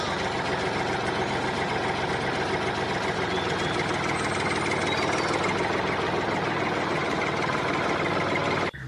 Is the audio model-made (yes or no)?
no